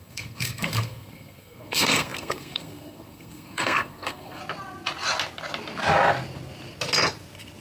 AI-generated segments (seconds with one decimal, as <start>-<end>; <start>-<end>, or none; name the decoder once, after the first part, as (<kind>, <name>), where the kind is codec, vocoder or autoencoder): 0.0-4.4 (codec, SNAC)